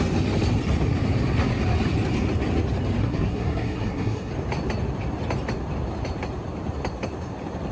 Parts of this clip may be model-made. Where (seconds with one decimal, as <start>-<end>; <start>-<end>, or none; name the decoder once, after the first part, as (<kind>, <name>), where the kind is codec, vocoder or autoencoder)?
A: 3.0-4.3 (codec, SNAC)